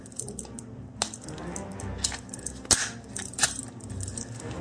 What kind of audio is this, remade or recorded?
recorded